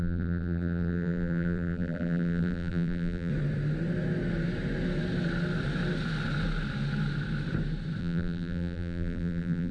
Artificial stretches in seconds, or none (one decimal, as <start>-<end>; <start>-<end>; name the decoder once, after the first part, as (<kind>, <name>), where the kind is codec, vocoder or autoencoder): 0.0-3.3 (vocoder, BigVGAN v2); 8.0-9.7